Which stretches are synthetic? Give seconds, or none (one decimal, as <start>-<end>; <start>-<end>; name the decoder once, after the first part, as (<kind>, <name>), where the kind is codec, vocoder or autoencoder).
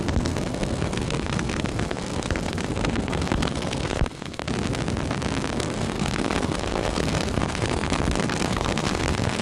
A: 0.0-4.4 (codec, SNAC); 5.6-9.4